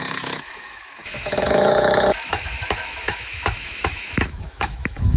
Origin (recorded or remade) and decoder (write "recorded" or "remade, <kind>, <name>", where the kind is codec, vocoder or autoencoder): remade, autoencoder, DAC-VAE